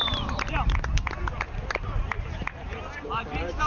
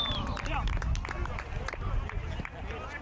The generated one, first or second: first